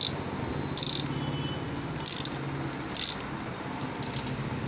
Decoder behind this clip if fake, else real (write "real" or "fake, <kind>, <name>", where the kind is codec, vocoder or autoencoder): real